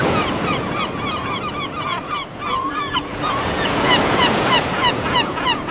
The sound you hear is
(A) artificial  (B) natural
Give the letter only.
A